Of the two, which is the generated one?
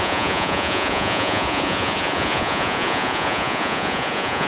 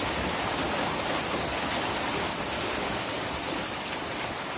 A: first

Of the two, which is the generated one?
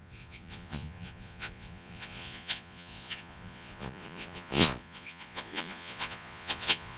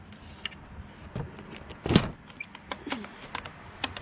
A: first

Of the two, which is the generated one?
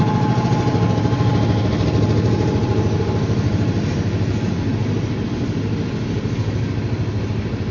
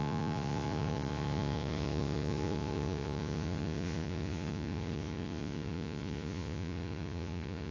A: second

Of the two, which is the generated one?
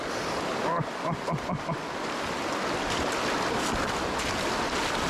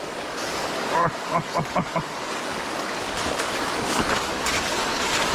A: second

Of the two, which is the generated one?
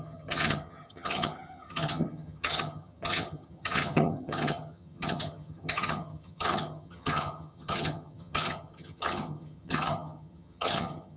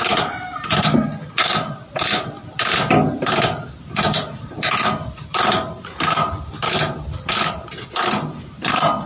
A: first